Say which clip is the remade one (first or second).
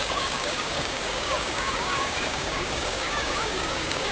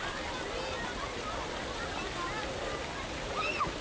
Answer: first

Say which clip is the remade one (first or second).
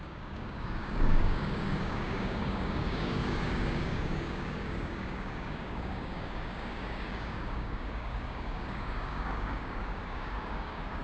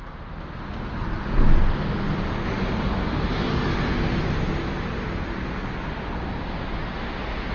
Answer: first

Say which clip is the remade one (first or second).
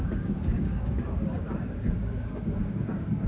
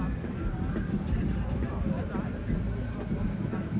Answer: first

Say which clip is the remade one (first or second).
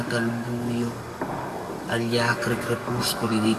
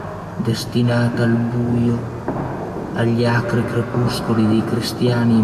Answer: first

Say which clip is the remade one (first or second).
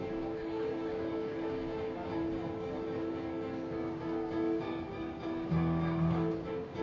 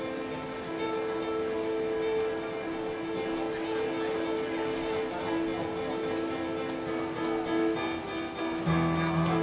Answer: first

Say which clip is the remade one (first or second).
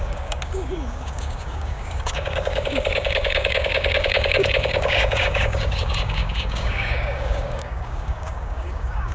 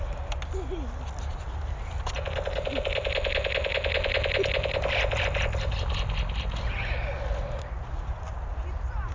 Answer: first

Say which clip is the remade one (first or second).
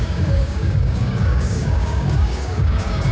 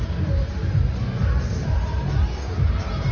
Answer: first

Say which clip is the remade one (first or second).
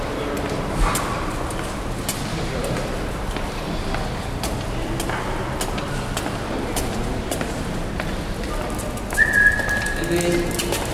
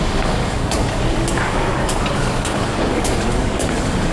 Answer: second